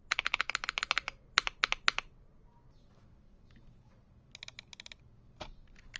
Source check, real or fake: real